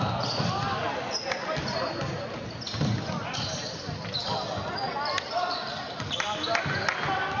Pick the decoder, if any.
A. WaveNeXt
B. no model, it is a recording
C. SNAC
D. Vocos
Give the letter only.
B